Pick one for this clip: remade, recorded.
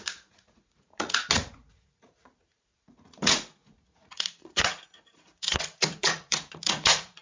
remade